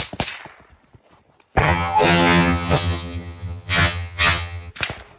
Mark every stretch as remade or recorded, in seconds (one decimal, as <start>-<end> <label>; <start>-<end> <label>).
0.0-1.6 recorded; 1.6-4.7 remade; 4.7-5.2 recorded